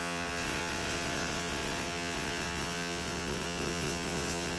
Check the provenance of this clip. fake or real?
fake